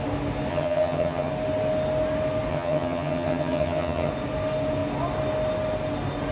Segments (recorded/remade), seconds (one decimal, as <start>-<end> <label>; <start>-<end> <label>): 0.0-0.5 recorded; 0.5-1.3 remade; 1.3-2.5 recorded; 2.5-4.1 remade; 4.1-6.3 recorded